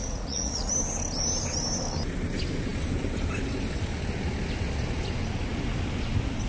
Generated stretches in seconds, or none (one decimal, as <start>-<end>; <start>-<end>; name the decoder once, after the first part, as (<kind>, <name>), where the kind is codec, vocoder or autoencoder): 0.0-0.7 (vocoder, Vocos)